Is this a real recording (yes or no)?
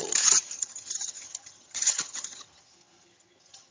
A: no